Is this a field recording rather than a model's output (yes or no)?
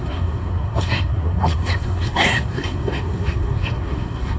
no